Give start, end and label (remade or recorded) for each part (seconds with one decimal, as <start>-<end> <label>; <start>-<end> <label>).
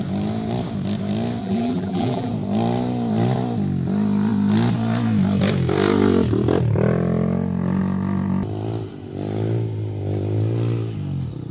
0.0-1.4 recorded; 1.4-2.3 remade; 2.3-11.5 recorded